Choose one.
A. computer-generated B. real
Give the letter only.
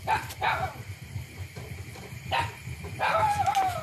B